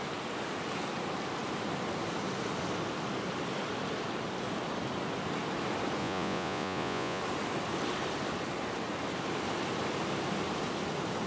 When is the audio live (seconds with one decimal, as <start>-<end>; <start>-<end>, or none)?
0.0-6.0; 7.2-11.3